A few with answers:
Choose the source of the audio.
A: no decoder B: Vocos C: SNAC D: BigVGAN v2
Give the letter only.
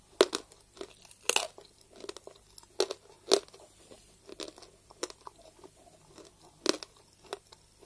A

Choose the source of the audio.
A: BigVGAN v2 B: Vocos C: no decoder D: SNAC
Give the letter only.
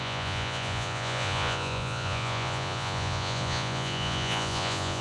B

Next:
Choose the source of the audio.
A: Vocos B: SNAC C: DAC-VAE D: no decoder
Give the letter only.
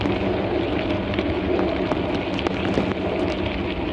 D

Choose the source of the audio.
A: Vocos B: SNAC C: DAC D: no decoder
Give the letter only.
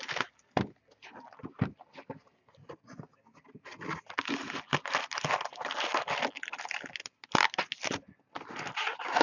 D